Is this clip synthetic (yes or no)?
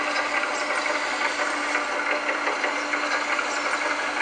no